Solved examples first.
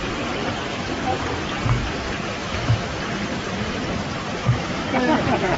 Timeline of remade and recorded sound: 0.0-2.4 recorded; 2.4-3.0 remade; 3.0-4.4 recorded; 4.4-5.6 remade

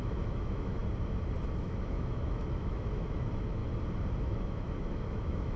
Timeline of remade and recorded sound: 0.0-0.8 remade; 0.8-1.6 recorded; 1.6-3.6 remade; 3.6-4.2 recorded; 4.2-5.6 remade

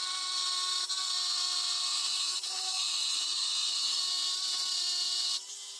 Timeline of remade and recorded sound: 0.0-2.2 recorded; 2.2-4.0 remade; 4.0-5.8 recorded